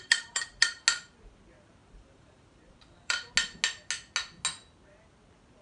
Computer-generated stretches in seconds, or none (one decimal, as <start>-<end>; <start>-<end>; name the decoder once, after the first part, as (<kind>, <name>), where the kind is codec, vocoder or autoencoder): 1.8-3.3 (vocoder, BigVGAN v2)